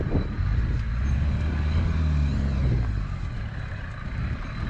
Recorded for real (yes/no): yes